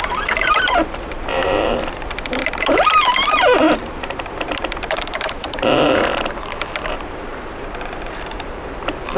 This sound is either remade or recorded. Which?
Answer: remade